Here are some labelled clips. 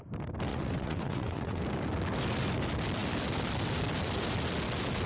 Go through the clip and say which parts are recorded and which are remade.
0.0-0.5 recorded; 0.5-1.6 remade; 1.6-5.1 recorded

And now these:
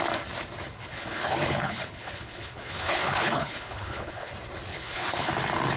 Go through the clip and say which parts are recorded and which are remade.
0.0-0.8 recorded; 0.8-4.3 remade; 4.3-4.7 recorded; 4.7-5.3 remade; 5.3-5.8 recorded

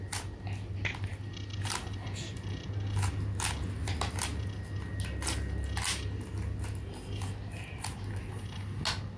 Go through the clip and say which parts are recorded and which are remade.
0.0-9.2 recorded

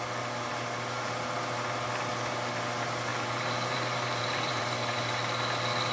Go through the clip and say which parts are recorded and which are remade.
0.0-3.1 recorded; 3.1-4.6 remade; 4.6-5.9 recorded

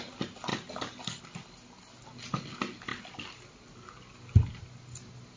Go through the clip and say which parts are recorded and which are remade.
0.0-5.4 recorded